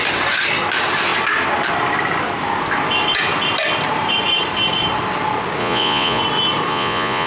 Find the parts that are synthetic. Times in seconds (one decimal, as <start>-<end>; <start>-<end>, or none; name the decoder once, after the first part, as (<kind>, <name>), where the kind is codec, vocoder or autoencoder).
5.6-6.2 (vocoder, Vocos); 6.7-7.3